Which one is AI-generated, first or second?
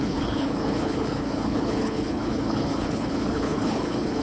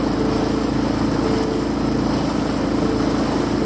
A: first